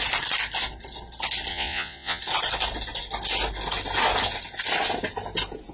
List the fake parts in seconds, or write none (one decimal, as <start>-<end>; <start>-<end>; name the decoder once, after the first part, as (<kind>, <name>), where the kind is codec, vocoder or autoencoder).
1.5-2.2 (vocoder, Vocos)